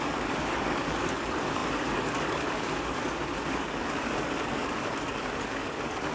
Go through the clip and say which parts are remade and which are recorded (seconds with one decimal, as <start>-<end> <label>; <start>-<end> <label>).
0.0-6.1 remade